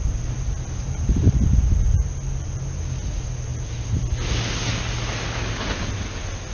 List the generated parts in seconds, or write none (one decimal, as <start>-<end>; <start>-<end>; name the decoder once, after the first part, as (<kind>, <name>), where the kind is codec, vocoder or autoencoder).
none